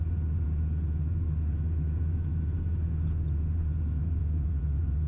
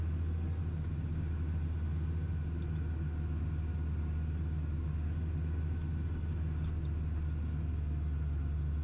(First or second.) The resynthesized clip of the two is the first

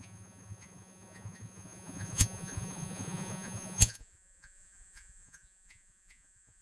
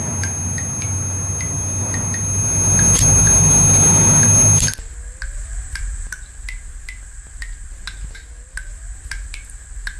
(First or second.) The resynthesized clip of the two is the first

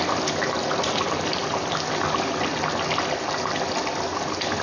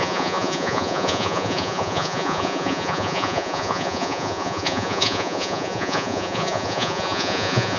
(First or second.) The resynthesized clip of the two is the second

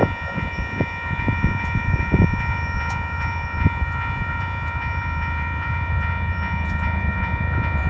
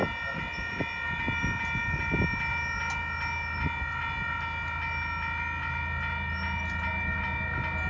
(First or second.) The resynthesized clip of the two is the first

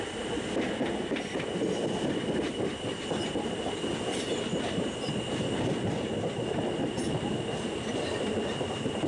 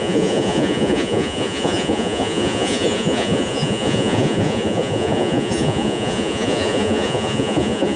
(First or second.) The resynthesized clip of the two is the second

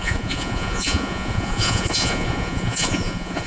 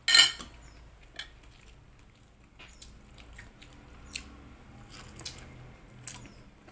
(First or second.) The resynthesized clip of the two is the first